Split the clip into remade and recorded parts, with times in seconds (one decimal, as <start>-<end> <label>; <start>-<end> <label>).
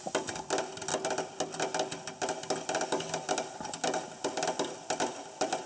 0.0-5.7 recorded